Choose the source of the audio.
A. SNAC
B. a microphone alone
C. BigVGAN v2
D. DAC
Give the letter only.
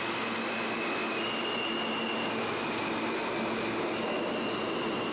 B